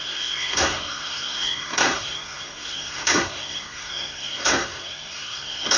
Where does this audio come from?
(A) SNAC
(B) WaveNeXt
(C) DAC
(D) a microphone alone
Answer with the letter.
A